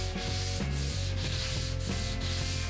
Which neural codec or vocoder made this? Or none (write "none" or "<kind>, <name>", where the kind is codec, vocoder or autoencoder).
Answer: none